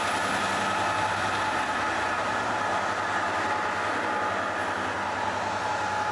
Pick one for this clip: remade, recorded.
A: recorded